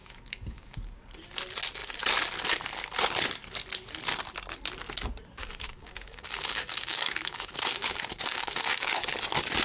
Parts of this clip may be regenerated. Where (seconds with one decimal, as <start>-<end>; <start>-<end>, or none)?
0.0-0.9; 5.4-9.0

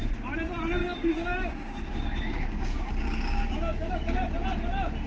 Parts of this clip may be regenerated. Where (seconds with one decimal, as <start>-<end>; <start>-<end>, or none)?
0.8-3.9

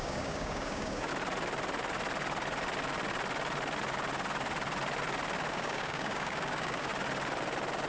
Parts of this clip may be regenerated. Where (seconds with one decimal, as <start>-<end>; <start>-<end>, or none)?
0.0-1.1; 5.5-6.9